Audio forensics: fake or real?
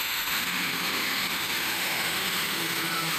fake